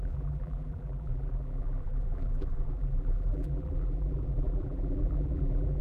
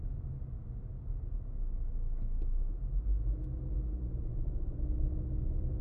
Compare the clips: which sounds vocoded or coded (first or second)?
first